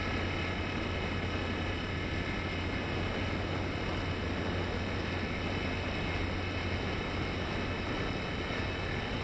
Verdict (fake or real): real